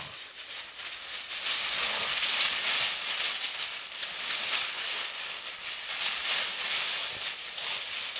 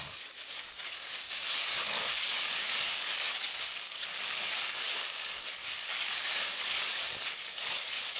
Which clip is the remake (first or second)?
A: second